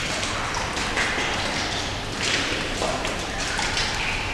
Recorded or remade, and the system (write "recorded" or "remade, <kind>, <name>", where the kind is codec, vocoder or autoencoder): recorded